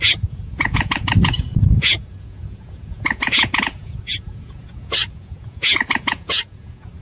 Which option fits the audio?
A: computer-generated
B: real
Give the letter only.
A